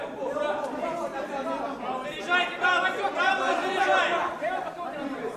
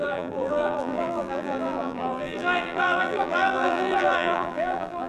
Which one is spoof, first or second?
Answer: second